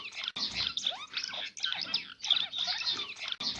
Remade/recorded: recorded